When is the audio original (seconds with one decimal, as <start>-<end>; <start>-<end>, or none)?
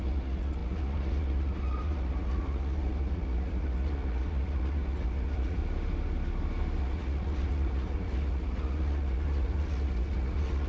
5.6-6.8